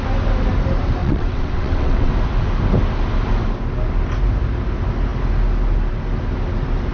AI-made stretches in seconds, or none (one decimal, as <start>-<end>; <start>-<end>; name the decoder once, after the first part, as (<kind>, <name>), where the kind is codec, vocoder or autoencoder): 1.0-2.1 (vocoder, WaveNeXt)